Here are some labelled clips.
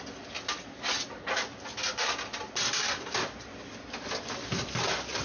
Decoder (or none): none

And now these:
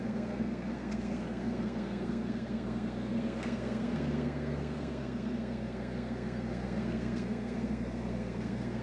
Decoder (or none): codec, SNAC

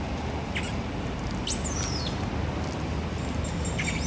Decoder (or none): none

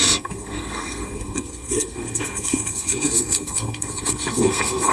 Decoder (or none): codec, SNAC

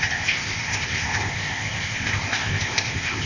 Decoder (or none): codec, ZipCodec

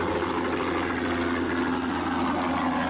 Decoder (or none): none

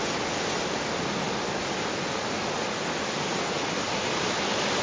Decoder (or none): none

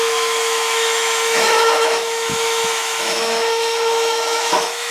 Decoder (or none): autoencoder, DAC-VAE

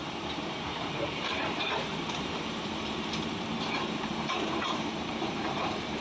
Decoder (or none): vocoder, BigVGAN v2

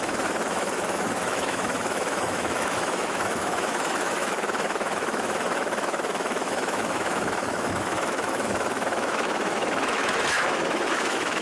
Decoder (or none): autoencoder, DAC-VAE